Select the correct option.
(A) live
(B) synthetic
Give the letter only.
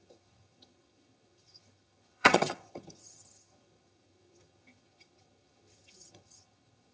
B